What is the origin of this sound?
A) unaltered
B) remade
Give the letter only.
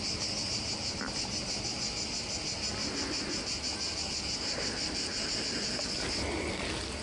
A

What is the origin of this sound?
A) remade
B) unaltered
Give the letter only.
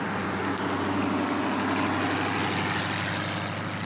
B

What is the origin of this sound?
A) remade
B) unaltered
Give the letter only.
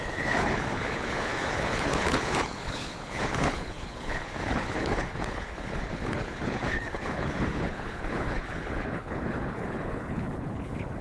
A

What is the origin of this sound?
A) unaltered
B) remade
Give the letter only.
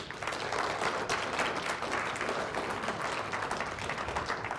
A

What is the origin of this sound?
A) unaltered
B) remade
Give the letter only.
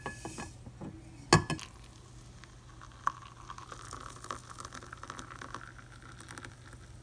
A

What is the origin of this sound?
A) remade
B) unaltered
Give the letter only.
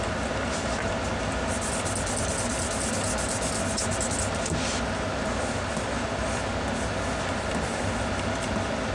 B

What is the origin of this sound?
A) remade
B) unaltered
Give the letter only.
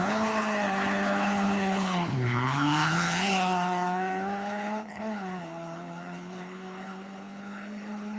A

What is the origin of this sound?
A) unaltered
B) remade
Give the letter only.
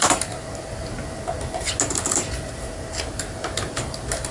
A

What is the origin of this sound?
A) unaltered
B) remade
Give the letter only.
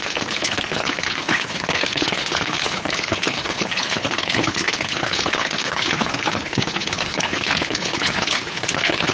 B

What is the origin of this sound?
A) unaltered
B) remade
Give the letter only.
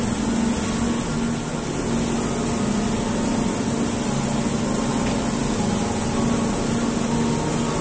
A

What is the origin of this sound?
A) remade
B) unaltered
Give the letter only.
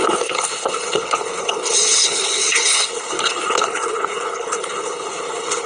A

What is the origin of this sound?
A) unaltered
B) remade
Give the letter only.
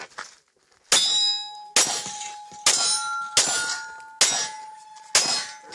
A